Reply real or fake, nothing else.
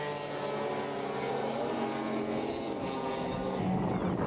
real